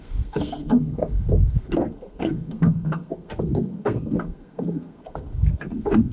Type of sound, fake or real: fake